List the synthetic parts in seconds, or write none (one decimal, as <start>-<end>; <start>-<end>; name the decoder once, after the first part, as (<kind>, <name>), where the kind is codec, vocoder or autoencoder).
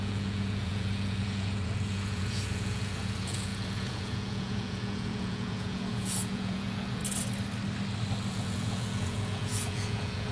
0.0-7.0 (vocoder, Vocos); 8.3-10.3